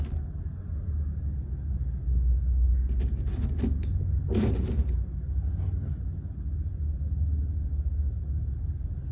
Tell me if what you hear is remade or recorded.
recorded